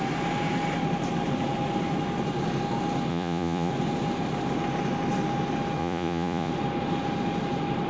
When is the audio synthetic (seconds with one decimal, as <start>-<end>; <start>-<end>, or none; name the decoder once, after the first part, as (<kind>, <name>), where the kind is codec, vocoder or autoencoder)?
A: 3.1-3.7 (vocoder, Vocos); 5.8-6.5

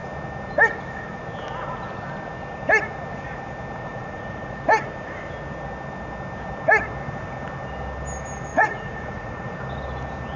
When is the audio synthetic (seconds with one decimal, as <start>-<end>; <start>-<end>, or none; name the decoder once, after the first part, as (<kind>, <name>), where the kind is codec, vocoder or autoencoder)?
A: 3.8-4.6 (vocoder, Vocos); 8.5-9.6

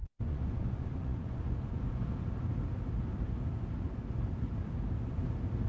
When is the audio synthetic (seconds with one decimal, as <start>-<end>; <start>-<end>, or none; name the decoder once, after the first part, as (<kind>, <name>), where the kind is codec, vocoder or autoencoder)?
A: 0.0-2.0 (vocoder, Vocos)

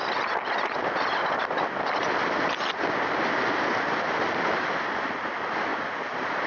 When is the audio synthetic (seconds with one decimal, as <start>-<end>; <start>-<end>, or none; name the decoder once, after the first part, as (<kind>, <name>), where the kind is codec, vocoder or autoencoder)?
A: none

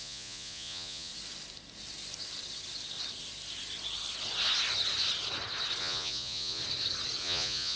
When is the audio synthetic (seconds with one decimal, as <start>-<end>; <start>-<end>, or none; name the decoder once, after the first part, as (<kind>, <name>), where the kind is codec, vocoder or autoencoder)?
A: 0.0-1.1 (vocoder, Vocos); 5.8-6.6; 7.2-7.8